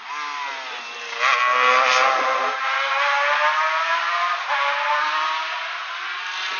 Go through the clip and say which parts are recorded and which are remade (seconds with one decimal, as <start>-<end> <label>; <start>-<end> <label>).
0.0-6.6 recorded